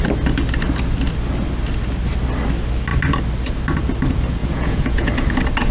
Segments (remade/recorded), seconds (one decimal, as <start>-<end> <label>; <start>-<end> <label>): 0.0-4.4 recorded; 4.4-5.1 remade; 5.1-5.7 recorded